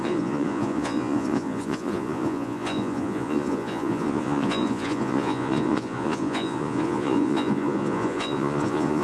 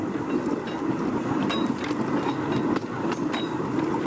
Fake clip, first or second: first